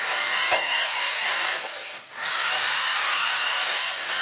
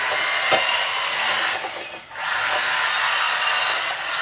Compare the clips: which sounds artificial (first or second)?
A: first